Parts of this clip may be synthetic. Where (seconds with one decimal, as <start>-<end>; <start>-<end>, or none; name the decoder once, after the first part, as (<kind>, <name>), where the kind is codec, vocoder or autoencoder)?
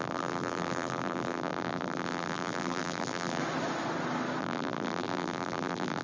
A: 0.0-3.4 (vocoder, BigVGAN v2); 4.4-6.0